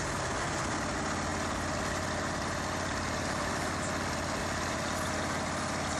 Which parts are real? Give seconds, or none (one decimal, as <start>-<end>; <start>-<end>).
0.0-6.0